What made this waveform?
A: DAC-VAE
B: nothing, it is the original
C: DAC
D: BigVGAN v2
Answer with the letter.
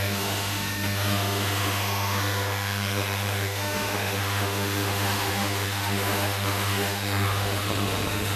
A